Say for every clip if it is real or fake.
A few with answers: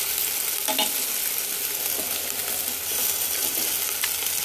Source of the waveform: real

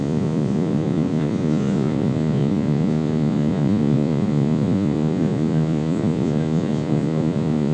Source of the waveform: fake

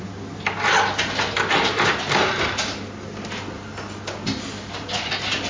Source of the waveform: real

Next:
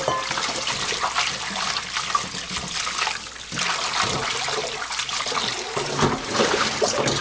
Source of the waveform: real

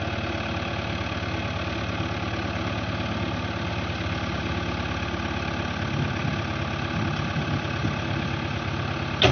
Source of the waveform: real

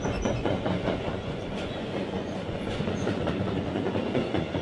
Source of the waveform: fake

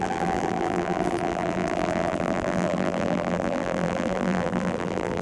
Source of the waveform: fake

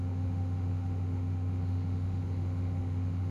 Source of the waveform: fake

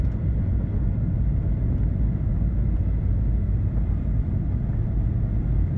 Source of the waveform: real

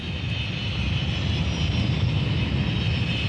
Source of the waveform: real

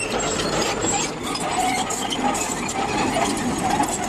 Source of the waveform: real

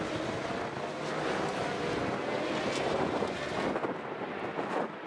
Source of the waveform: real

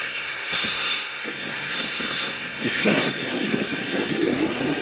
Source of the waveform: fake